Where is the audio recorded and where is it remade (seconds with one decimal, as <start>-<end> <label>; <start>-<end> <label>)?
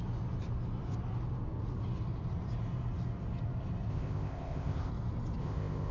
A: 0.0-3.9 recorded; 3.9-4.9 remade; 4.9-5.4 recorded; 5.4-5.9 remade